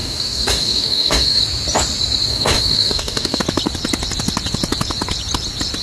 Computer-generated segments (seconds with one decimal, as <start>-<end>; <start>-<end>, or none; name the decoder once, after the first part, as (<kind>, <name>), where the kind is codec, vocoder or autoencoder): 0.0-1.4 (codec, DAC); 2.3-3.4